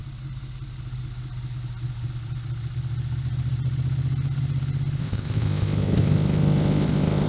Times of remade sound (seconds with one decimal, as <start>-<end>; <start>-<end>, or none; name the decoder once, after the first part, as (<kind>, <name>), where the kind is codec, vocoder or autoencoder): 5.0-7.3 (codec, ZipCodec)

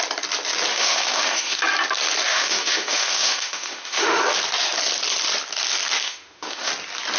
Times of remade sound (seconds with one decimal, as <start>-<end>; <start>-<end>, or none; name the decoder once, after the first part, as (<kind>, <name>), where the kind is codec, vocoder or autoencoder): 0.7-1.6 (autoencoder, DAC-VAE); 2.3-4.2; 6.0-6.7

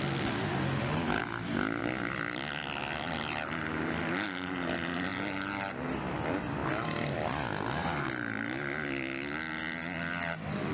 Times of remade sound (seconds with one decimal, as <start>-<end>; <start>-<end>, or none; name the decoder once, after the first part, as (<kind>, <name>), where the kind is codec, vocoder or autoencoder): none